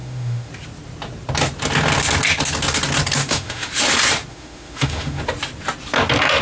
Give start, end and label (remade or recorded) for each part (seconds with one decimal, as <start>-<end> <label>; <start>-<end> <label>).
0.0-0.5 remade; 0.5-3.2 recorded; 3.2-3.7 remade; 3.7-4.3 recorded; 4.3-5.2 remade; 5.2-6.4 recorded